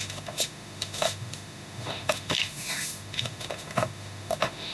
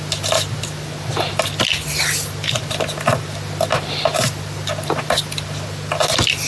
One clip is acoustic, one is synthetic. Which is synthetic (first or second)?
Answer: first